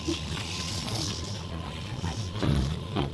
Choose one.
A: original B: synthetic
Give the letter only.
B